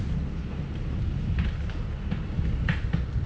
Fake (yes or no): no